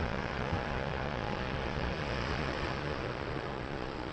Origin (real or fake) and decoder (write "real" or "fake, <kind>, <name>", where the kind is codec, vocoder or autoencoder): fake, vocoder, Vocos